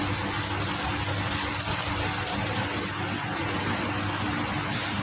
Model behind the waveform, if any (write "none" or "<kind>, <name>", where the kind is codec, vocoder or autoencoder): vocoder, BigVGAN v2